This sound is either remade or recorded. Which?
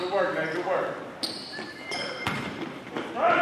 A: remade